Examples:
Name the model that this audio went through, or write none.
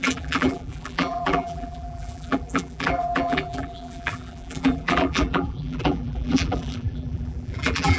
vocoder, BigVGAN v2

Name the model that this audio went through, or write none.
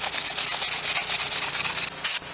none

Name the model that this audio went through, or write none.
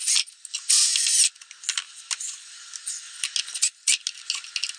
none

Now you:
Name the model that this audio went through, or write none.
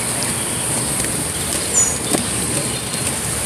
none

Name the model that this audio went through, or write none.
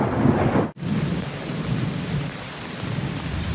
none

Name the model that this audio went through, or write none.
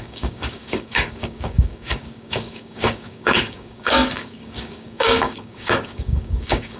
codec, DAC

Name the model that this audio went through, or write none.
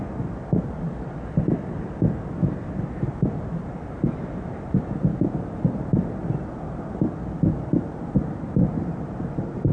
none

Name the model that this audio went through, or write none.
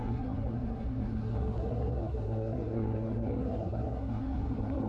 codec, SNAC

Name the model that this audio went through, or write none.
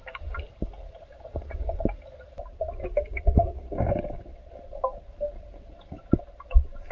none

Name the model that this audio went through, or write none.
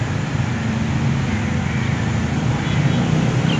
none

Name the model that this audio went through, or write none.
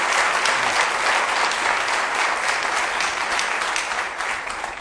none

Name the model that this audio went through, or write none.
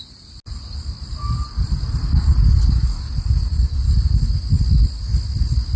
none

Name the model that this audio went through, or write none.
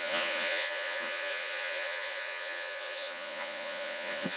vocoder, Vocos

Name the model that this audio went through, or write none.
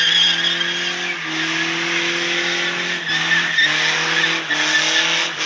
none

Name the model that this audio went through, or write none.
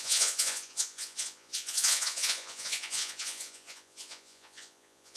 vocoder, Vocos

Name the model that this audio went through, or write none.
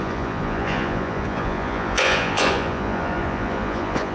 vocoder, Vocos